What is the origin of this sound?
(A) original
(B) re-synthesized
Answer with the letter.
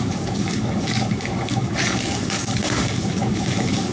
B